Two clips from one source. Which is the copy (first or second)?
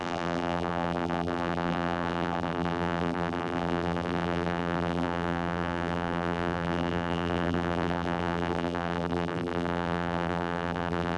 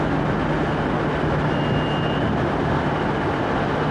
first